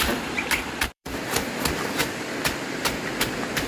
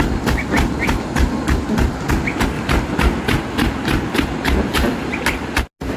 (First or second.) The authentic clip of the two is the second